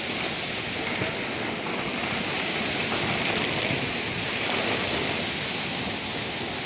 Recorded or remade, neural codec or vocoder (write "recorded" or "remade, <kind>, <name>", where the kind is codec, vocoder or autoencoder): recorded